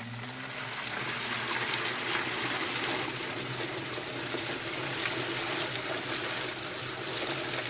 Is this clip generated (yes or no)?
no